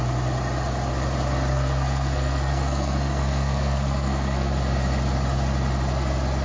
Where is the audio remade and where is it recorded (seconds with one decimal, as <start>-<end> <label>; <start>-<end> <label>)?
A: 0.0-1.5 recorded; 1.5-4.5 remade; 4.5-6.4 recorded